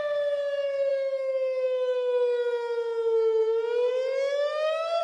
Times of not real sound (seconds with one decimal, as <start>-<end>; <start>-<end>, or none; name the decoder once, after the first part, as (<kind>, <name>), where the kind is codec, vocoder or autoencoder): 0.9-3.4 (autoencoder, DAC-VAE); 3.9-5.0